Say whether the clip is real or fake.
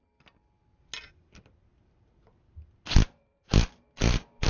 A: real